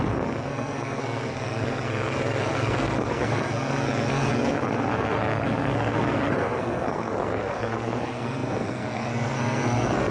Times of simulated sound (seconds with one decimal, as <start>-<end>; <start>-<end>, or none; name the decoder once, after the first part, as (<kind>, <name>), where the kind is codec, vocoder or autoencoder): 0.0-10.1 (codec, SNAC)